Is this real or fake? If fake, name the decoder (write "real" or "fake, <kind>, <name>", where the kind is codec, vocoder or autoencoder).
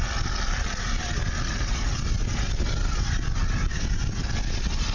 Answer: real